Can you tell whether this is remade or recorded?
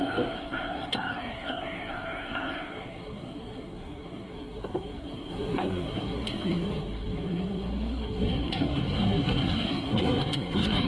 remade